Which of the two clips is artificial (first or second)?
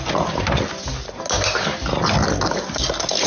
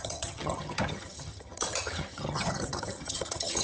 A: second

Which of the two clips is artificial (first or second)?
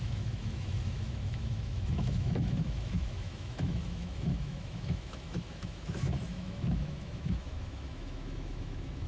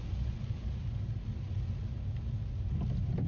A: first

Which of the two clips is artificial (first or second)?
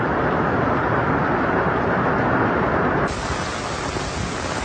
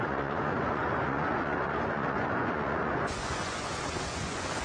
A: second